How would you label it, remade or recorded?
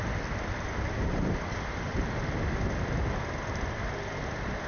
recorded